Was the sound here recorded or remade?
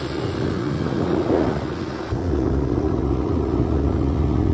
remade